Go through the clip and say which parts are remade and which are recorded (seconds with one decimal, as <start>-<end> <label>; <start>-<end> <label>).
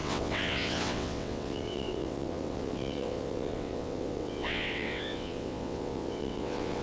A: 0.0-6.8 remade